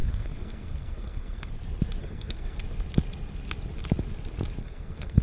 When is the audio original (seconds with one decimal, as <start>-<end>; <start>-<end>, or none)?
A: 1.5-2.0; 2.6-4.6